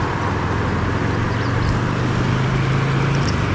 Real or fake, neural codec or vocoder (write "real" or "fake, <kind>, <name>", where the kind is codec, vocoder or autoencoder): real